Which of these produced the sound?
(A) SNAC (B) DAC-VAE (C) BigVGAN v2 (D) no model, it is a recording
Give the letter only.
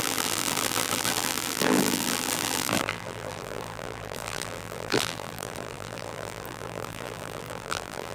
C